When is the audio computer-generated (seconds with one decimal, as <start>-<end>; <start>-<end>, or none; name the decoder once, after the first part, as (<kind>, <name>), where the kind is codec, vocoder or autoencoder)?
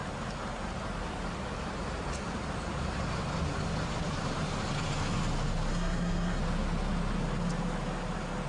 5.7-6.4 (codec, SNAC)